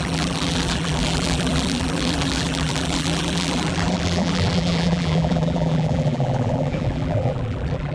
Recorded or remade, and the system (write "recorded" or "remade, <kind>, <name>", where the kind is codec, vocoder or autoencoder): remade, vocoder, BigVGAN v2